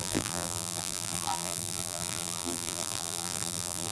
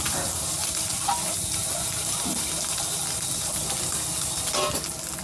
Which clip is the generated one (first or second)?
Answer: first